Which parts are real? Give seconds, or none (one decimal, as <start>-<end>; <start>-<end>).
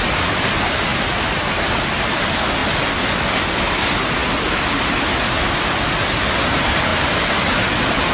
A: 0.0-8.1